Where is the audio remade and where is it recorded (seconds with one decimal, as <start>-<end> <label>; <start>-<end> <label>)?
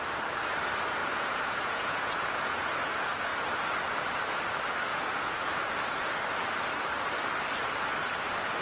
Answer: 0.0-1.0 recorded; 1.0-2.7 remade; 2.7-4.9 recorded; 4.9-5.5 remade; 5.5-8.6 recorded